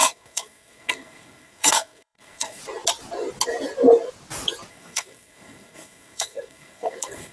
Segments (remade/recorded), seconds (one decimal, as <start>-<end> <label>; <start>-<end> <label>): 0.0-2.6 remade; 2.6-4.7 recorded; 4.7-7.3 remade